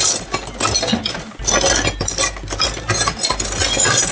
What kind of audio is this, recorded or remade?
recorded